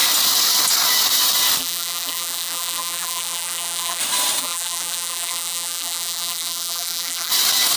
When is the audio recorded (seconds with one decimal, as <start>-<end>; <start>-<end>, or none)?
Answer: 0.0-1.6; 4.0-4.4; 7.3-7.8